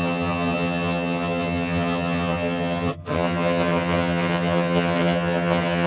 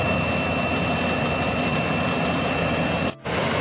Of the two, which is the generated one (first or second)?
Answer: first